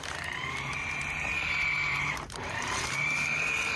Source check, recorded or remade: remade